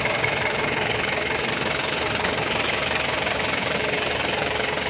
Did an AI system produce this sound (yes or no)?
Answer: yes